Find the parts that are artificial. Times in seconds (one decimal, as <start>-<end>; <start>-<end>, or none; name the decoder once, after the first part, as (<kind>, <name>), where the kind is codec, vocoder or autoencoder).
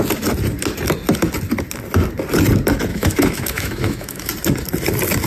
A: 2.9-4.3 (autoencoder, DAC-VAE)